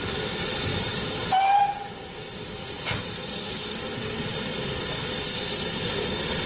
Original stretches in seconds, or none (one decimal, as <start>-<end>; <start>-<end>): 0.0-6.5